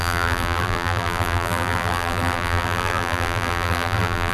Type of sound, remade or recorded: remade